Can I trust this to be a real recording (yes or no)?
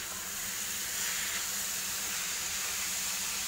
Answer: no